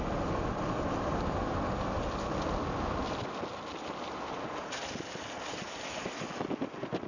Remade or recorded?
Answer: recorded